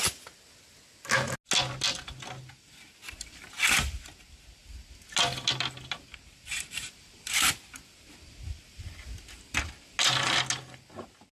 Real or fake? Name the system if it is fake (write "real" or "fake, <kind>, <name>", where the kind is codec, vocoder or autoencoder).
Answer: real